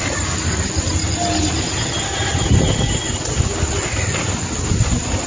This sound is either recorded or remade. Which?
recorded